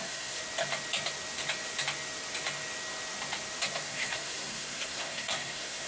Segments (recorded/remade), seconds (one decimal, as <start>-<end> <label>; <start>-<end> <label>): 0.0-0.4 remade; 0.4-3.8 recorded; 3.8-5.9 remade